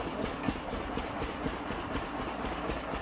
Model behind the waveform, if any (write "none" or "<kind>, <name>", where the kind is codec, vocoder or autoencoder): none